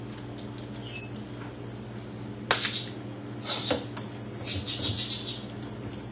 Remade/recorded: recorded